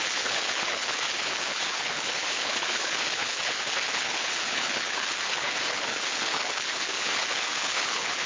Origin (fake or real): fake